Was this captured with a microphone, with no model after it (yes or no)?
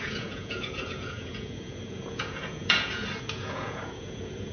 no